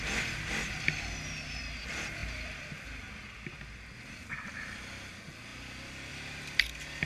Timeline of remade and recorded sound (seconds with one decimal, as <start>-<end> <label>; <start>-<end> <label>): 0.0-7.1 recorded

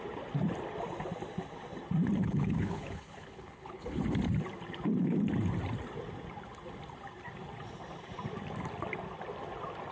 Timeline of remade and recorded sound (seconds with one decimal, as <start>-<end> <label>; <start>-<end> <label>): 0.0-2.2 recorded; 2.2-4.0 remade; 4.0-9.9 recorded